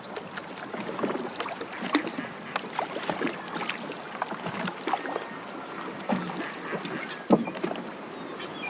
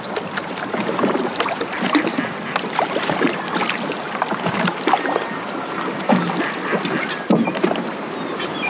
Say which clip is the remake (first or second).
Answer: second